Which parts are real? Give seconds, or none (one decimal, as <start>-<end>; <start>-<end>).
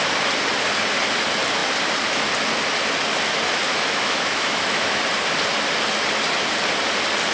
0.0-3.7; 5.0-7.3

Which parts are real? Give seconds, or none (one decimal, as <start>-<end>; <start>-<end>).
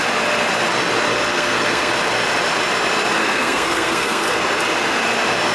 0.0-1.3; 1.9-3.2; 4.4-5.5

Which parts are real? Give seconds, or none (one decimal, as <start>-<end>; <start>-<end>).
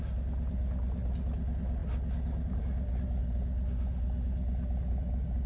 0.0-5.5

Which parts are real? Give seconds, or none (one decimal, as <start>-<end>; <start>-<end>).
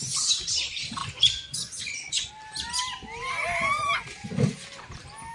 0.0-1.0; 2.3-5.3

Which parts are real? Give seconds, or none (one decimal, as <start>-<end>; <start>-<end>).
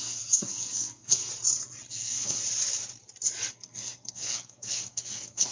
1.3-1.9; 2.4-3.5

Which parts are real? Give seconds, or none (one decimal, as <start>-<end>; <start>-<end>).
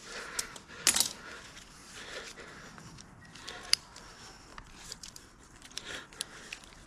0.0-4.5; 6.0-6.9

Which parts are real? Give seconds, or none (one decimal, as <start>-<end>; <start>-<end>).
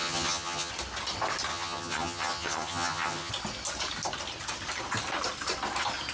0.7-1.5; 3.3-6.1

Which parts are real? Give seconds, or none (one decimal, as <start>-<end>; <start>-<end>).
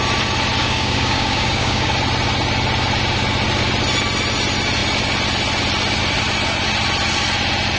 0.0-0.6; 1.9-7.8